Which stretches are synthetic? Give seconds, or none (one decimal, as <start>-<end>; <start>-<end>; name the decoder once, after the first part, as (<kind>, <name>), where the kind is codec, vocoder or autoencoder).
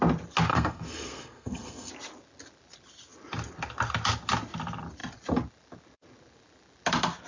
0.5-1.9 (codec, SNAC)